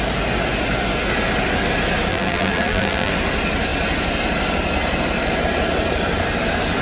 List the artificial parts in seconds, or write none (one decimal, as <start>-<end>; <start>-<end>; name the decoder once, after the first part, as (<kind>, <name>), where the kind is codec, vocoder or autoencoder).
2.1-3.1 (vocoder, BigVGAN v2)